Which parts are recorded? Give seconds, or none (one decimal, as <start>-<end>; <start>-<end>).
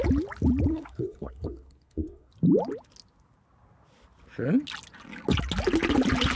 0.0-0.7; 2.3-6.4